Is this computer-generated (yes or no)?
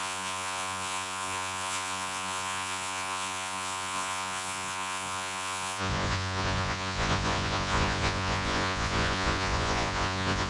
yes